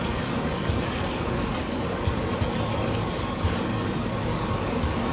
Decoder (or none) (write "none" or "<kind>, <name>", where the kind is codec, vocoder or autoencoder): codec, DAC